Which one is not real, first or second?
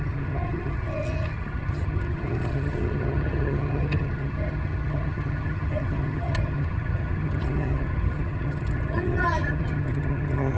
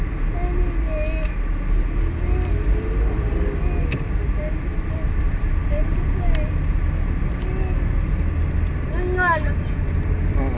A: first